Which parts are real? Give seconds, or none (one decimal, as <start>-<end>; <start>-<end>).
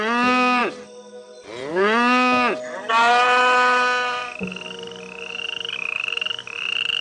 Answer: 0.0-7.0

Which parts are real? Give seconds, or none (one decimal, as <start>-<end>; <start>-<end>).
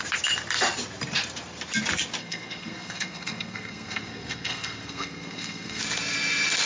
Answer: 0.0-2.2; 5.8-6.7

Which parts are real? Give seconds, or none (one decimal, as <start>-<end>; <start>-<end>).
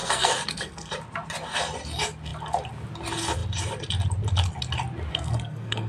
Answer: 0.9-5.1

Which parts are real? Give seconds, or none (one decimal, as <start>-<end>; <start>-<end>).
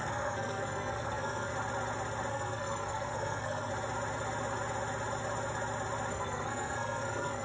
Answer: 1.5-2.3; 3.7-6.1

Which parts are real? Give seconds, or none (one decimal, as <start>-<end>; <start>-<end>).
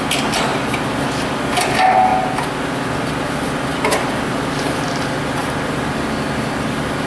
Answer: 0.0-7.1